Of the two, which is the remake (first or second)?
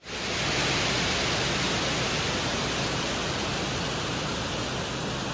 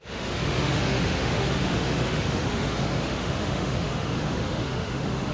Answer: second